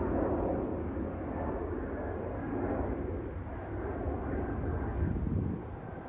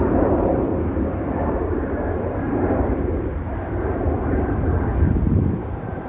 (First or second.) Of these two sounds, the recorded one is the first